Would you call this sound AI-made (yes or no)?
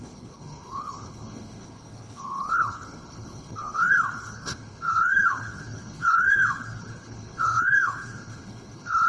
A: yes